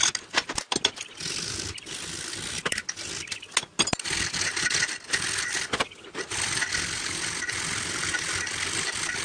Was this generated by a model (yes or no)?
no